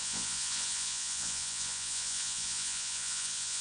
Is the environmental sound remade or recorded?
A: remade